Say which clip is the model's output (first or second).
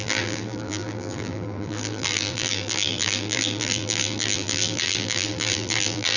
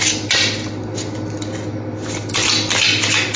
first